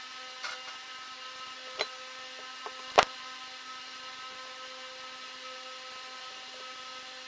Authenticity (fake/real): real